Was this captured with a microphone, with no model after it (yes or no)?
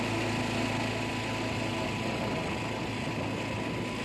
yes